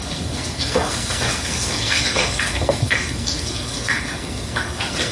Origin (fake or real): fake